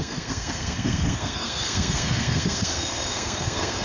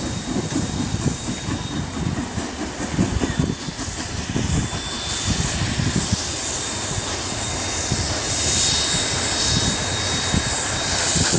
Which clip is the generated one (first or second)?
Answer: first